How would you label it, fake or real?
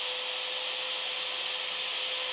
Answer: real